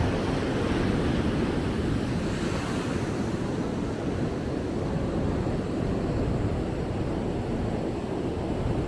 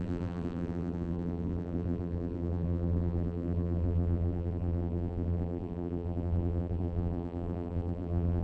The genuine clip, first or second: first